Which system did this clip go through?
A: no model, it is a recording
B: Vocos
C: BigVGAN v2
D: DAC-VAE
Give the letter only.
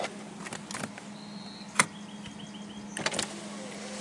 A